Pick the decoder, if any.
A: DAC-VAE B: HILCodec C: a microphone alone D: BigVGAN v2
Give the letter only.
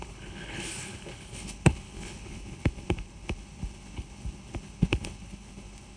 B